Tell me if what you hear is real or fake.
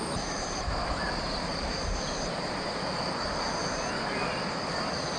fake